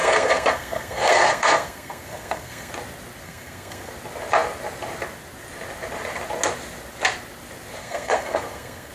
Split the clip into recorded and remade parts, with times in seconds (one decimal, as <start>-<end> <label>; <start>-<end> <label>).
0.0-2.7 remade; 2.7-3.2 recorded; 3.2-3.9 remade; 3.9-7.8 recorded; 7.8-8.9 remade